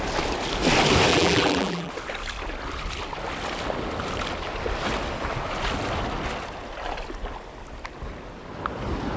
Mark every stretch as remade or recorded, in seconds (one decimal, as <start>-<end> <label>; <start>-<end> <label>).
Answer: 0.0-1.1 recorded; 1.1-1.9 remade; 1.9-9.2 recorded